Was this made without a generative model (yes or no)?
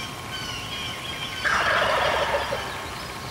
yes